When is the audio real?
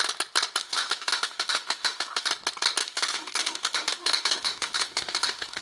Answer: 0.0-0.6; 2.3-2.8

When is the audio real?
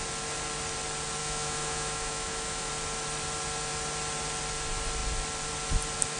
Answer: 0.0-1.2; 2.7-6.2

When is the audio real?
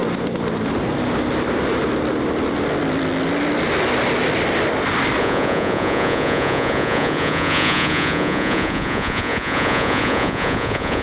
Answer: 0.0-5.2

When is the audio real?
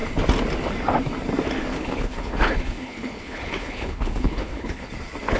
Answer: 0.0-1.7; 4.9-5.4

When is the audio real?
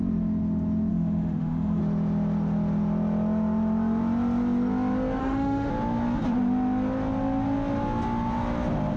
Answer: 0.0-0.9; 1.8-5.2; 5.7-9.0